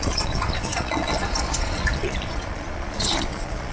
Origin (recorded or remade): remade